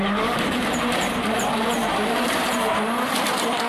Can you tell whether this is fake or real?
fake